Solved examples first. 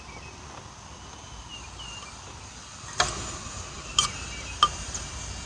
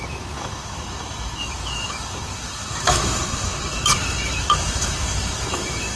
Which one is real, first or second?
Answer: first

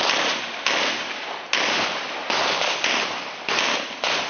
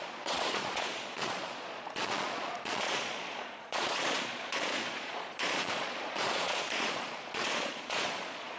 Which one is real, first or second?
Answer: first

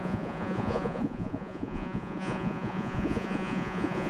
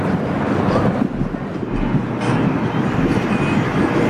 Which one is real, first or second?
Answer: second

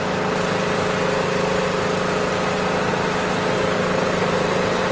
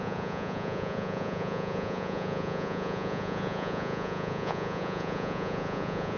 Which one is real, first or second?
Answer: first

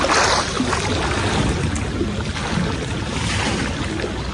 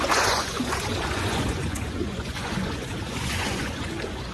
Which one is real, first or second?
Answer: first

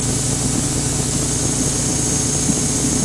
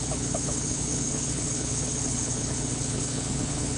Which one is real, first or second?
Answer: first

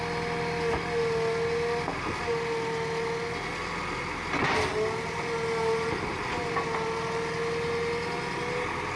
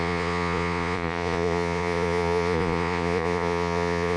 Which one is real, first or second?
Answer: first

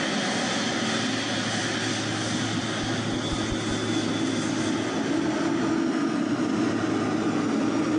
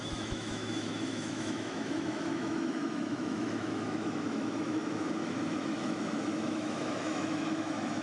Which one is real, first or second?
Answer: first